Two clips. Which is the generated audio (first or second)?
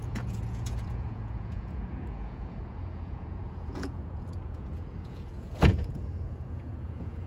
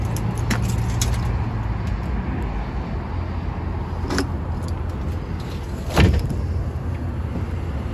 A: first